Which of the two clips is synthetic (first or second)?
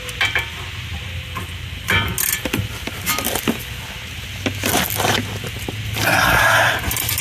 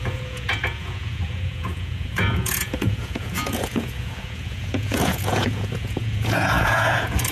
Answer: second